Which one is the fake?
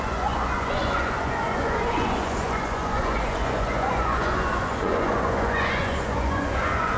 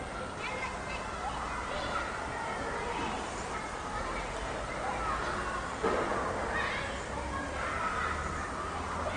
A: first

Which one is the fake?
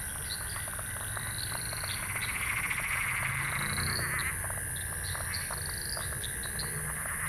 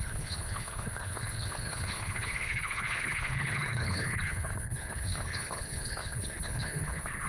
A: second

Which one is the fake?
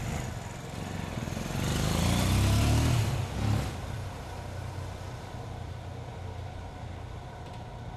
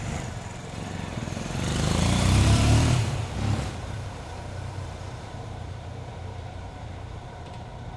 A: second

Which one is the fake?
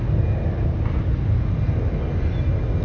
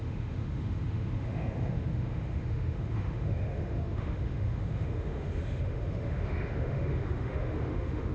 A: second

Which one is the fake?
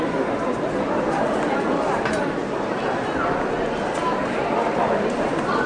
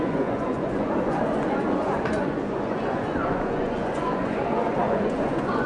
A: second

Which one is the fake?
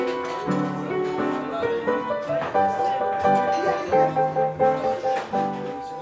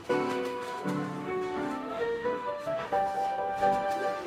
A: second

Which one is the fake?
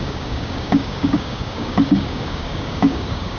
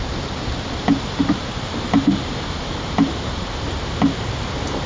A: first